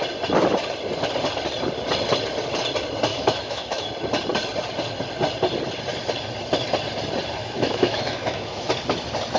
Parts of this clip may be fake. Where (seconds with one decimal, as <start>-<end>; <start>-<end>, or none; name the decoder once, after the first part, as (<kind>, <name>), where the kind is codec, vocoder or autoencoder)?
3.1-3.9 (autoencoder, DAC-VAE); 7.4-8.7